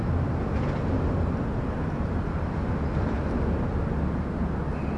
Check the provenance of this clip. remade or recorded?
recorded